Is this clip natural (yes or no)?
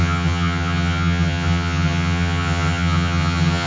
no